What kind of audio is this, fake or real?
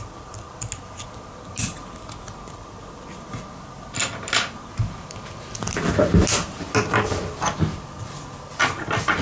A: real